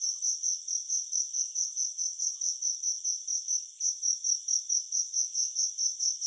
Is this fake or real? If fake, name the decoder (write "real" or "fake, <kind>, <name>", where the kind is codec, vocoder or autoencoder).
real